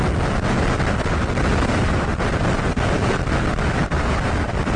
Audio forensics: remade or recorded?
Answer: recorded